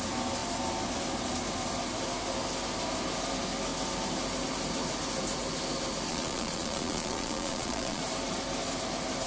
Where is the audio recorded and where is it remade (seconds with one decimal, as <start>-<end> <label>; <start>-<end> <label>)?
0.0-6.1 recorded; 6.1-8.0 remade; 8.0-9.3 recorded